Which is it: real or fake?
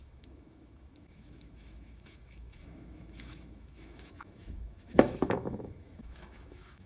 fake